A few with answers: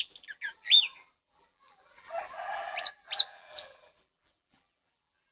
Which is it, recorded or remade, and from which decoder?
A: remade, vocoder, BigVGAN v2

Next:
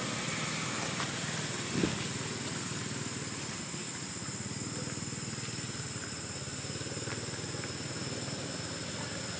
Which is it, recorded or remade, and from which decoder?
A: recorded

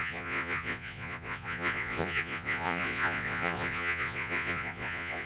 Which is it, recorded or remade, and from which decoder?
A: remade, vocoder, Vocos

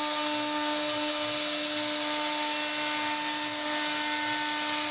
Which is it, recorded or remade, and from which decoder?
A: recorded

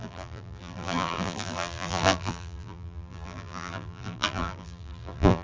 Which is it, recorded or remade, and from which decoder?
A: remade, vocoder, BigVGAN v2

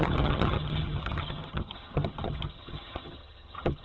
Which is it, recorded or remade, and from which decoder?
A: remade, vocoder, HiFi-GAN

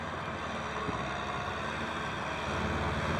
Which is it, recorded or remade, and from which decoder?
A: recorded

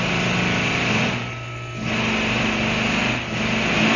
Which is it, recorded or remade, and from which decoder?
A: recorded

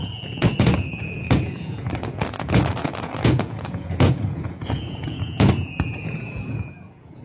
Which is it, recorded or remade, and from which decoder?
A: remade, vocoder, Vocos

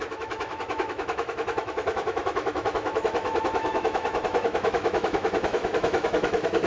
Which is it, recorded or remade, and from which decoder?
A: remade, autoencoder, DAC-VAE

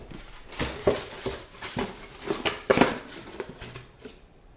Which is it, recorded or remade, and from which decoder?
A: recorded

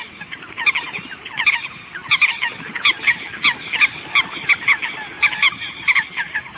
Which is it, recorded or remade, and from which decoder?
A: recorded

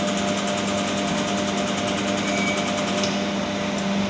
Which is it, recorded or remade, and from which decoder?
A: recorded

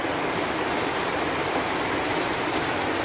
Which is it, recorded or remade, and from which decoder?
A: recorded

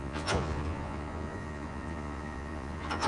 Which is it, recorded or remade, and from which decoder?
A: remade, vocoder, Vocos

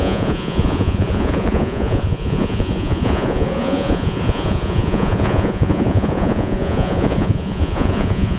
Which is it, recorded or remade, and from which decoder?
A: remade, vocoder, Vocos